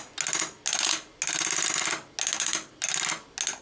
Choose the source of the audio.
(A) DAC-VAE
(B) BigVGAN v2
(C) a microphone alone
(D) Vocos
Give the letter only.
C